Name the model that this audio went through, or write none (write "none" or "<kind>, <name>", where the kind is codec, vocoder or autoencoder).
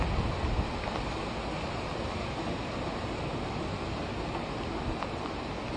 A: none